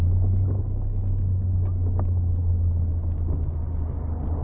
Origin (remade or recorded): recorded